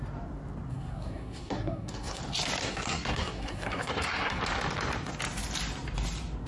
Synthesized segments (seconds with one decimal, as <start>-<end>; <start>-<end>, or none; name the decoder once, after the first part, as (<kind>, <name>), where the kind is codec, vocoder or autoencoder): 0.7-2.2 (codec, SNAC); 2.6-4.4